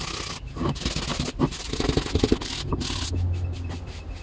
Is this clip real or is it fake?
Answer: real